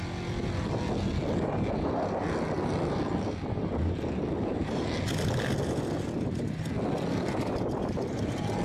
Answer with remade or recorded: recorded